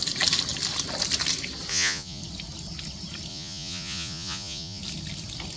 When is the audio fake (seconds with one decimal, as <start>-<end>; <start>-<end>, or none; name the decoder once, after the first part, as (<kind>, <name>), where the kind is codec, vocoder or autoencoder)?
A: 1.7-2.2 (vocoder, Vocos); 3.3-4.8